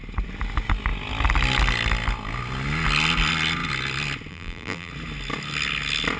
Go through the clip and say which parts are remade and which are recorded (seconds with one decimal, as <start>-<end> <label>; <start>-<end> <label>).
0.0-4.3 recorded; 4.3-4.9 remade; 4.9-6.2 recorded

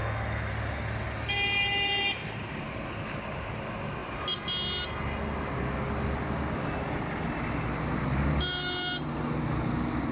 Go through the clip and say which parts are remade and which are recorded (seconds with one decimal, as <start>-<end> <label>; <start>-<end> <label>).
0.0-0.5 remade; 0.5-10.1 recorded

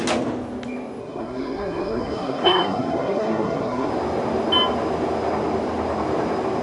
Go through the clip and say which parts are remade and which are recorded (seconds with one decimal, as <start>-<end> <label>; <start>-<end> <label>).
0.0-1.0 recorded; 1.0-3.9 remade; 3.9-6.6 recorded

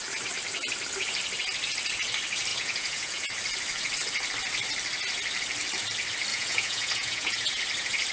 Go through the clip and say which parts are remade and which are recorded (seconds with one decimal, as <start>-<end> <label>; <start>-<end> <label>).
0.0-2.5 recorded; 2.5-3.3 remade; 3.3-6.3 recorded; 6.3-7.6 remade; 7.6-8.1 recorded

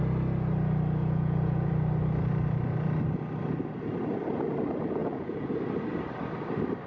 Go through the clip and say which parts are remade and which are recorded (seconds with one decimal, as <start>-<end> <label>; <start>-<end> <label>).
0.0-1.0 recorded; 1.0-1.7 remade; 1.7-5.0 recorded; 5.0-5.5 remade; 5.5-6.9 recorded